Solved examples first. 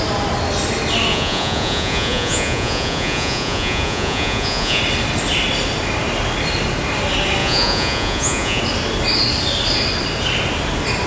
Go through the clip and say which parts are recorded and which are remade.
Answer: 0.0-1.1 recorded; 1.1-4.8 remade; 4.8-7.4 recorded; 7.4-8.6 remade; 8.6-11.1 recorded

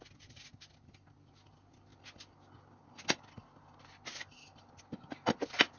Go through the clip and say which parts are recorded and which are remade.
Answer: 0.0-5.8 recorded